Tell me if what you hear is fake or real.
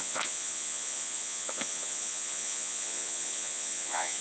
fake